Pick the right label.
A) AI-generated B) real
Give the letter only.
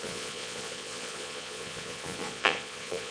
A